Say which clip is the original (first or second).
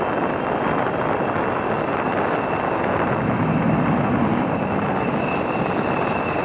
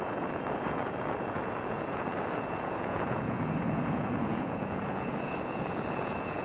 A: first